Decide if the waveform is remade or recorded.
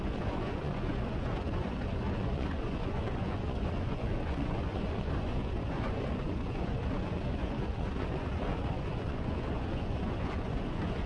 remade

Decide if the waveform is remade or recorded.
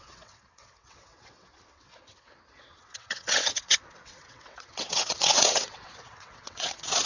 remade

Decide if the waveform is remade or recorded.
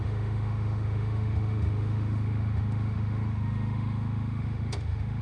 remade